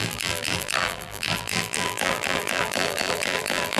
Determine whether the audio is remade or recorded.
remade